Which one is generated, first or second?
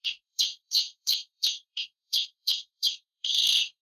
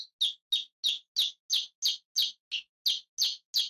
first